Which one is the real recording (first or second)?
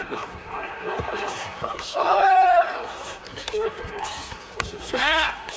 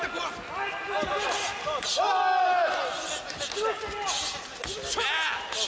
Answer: second